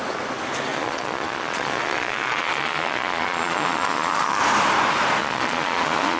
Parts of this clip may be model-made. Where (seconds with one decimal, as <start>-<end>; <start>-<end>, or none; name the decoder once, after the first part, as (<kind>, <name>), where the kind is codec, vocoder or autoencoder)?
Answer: 0.7-4.4 (vocoder, Vocos); 5.2-6.2